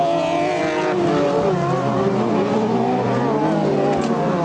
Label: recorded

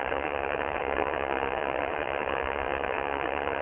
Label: remade